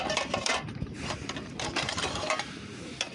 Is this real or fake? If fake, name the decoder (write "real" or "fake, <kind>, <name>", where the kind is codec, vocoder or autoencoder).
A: fake, vocoder, BigVGAN v2